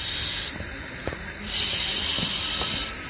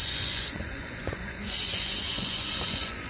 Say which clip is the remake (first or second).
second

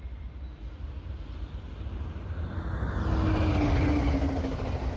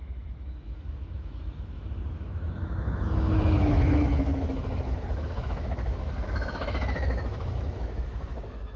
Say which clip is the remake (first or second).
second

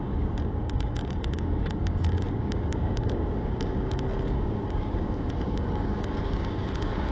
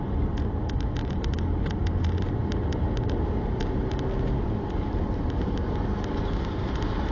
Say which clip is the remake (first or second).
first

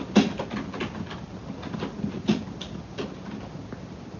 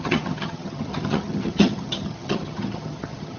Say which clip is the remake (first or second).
second